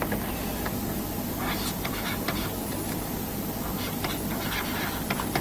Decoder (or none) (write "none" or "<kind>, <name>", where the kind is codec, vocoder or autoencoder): none